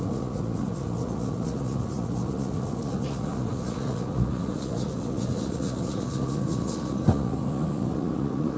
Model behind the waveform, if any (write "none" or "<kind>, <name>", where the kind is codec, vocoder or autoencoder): vocoder, Vocos